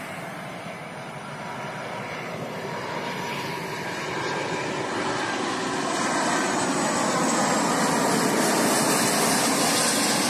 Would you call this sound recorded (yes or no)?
yes